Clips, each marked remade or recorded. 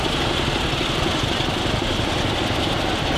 remade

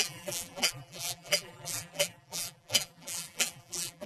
remade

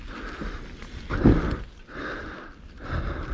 recorded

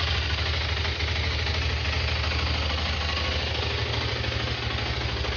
recorded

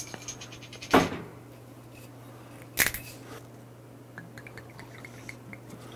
recorded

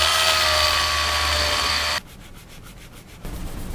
recorded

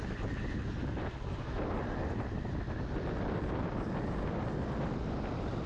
recorded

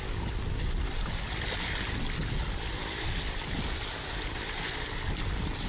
recorded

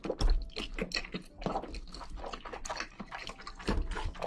recorded